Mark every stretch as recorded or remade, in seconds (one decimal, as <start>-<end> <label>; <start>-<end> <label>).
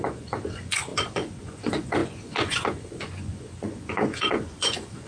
0.0-5.1 remade